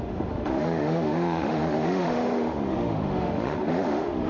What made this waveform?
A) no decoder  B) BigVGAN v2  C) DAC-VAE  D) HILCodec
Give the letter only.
C